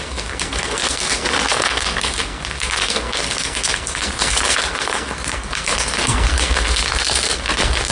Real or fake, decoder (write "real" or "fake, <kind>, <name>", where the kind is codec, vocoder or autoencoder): fake, codec, SNAC